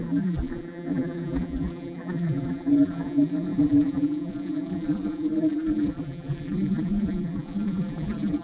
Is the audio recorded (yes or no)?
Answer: no